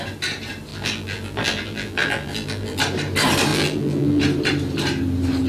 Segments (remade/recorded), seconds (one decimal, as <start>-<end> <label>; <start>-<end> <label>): 0.0-0.7 recorded; 0.7-2.8 remade; 2.8-3.5 recorded; 3.5-4.2 remade; 4.2-5.5 recorded

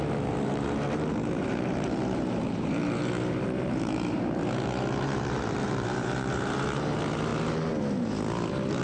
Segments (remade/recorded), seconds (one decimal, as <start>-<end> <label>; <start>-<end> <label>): 0.0-7.3 remade; 7.3-8.8 recorded

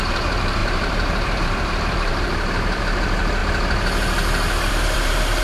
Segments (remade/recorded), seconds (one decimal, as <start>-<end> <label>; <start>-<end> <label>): 0.0-3.4 remade; 3.4-4.7 recorded; 4.7-5.4 remade

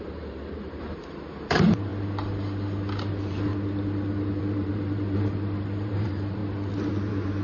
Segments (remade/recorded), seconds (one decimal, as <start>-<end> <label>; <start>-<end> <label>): 0.0-1.9 remade; 1.9-3.1 recorded; 3.1-3.5 remade; 3.5-4.4 recorded; 4.4-6.4 remade; 6.4-6.9 recorded; 6.9-7.4 remade